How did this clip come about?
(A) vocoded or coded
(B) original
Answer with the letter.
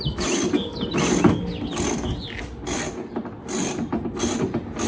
B